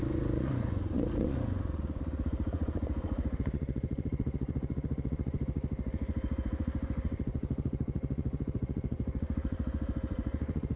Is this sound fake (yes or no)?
yes